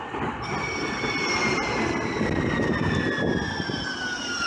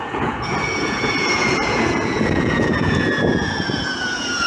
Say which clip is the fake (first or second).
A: second